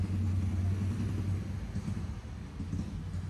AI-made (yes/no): no